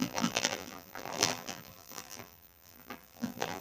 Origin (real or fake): fake